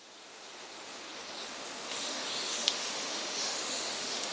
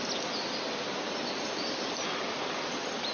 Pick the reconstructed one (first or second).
first